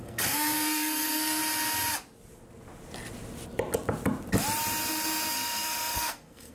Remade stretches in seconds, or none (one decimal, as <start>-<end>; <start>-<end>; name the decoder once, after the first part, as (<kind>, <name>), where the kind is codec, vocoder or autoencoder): 0.0-1.4 (codec, SNAC); 5.3-6.5